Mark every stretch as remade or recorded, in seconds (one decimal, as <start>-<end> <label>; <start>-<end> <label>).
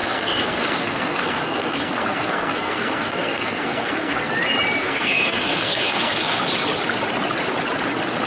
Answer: 0.0-4.3 remade; 4.3-4.8 recorded; 4.8-6.4 remade; 6.4-8.3 recorded